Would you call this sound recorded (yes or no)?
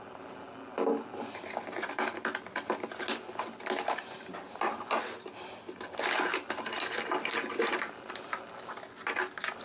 yes